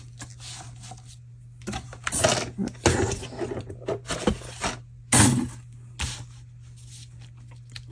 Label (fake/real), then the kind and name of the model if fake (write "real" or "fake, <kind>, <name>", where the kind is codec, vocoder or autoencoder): real